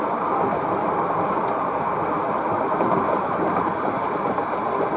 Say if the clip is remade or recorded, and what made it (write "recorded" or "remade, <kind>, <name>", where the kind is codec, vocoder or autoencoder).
recorded